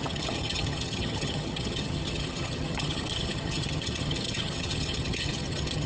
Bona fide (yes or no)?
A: no